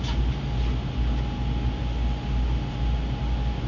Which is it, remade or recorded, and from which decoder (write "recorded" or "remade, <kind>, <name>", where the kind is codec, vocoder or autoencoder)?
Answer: recorded